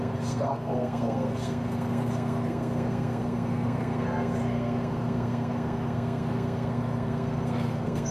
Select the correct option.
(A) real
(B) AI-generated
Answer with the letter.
B